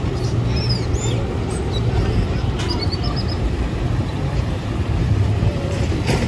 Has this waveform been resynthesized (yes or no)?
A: yes